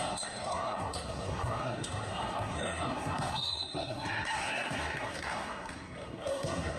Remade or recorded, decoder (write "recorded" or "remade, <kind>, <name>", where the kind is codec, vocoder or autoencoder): remade, codec, SNAC